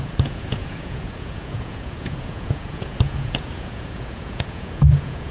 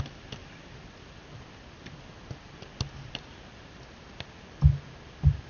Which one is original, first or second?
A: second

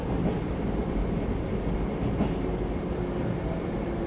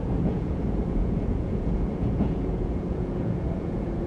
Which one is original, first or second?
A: first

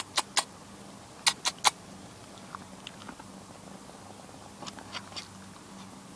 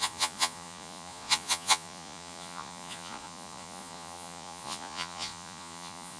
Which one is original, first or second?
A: first